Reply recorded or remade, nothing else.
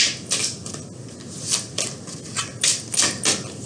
recorded